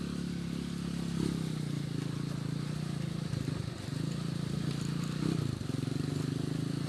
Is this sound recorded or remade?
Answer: recorded